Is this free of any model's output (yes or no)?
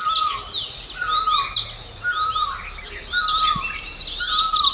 yes